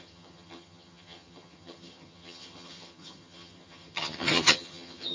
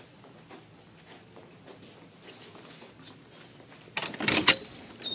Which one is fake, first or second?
first